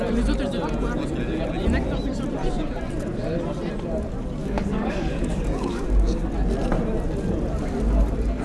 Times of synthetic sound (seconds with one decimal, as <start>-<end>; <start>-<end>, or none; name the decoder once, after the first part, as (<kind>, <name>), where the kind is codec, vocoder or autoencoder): 4.4-6.2 (codec, DAC)